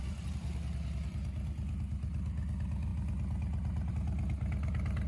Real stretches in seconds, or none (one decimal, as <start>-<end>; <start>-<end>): 0.0-5.1